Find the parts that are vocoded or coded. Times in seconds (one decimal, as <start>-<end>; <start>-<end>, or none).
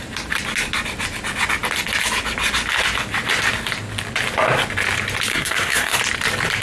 5.3-6.0